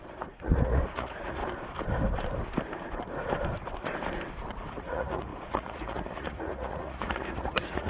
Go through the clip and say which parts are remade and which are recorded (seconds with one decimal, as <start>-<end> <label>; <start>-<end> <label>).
0.0-1.4 remade; 1.4-4.7 recorded; 4.7-7.9 remade